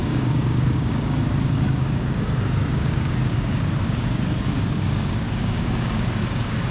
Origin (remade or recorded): remade